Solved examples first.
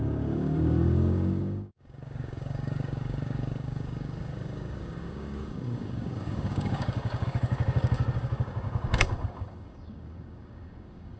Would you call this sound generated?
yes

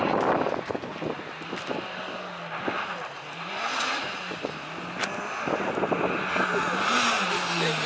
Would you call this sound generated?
no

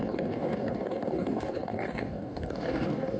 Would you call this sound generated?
yes